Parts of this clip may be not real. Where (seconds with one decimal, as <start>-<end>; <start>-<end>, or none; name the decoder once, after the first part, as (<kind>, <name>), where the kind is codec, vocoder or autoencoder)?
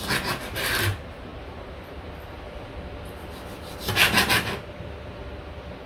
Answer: none